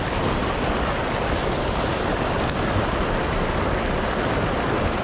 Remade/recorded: recorded